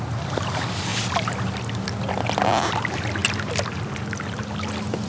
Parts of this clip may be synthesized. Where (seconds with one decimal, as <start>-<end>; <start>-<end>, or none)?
none